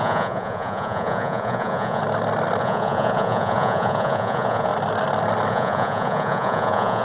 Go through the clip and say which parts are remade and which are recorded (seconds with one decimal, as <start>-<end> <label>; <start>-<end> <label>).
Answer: 0.0-2.0 remade; 2.0-2.6 recorded; 2.6-4.7 remade; 4.7-5.5 recorded; 5.5-7.0 remade